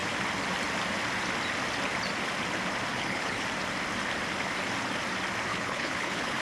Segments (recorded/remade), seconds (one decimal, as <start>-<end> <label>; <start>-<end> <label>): 0.0-2.9 recorded; 2.9-3.4 remade; 3.4-5.5 recorded; 5.5-6.4 remade

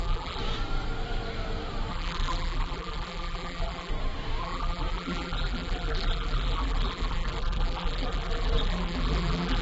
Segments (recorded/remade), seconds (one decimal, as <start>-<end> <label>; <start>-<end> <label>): 0.0-0.4 remade; 0.4-1.9 recorded; 1.9-3.9 remade; 3.9-4.4 recorded; 4.4-9.6 remade

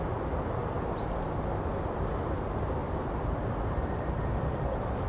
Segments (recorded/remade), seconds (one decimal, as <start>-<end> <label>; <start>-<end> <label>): 0.0-2.8 recorded; 2.8-5.1 remade

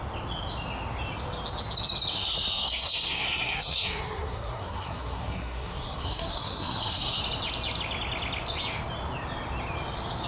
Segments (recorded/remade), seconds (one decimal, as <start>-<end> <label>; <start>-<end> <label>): 0.0-2.1 recorded; 2.1-7.2 remade; 7.2-10.3 recorded

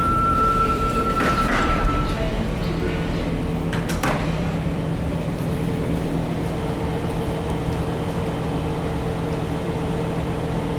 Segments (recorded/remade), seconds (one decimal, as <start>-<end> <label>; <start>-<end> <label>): 0.0-2.3 remade; 2.3-4.1 recorded; 4.1-6.2 remade; 6.2-7.2 recorded; 7.2-8.7 remade; 8.7-9.3 recorded; 9.3-10.8 remade

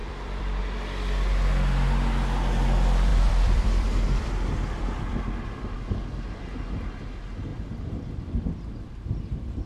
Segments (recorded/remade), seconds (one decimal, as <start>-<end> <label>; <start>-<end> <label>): 0.0-0.6 remade; 0.6-3.1 recorded; 3.1-5.2 remade; 5.2-7.5 recorded; 7.5-9.2 remade; 9.2-9.7 recorded

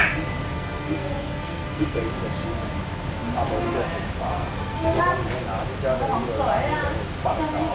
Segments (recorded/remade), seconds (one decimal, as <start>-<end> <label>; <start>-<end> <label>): 0.0-0.4 recorded; 0.4-2.0 remade; 2.0-4.3 recorded; 4.3-5.0 remade; 5.0-7.7 recorded